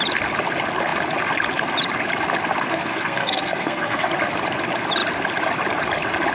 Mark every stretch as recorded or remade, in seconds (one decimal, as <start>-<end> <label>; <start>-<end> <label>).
0.0-2.7 recorded; 2.7-4.1 remade; 4.1-6.3 recorded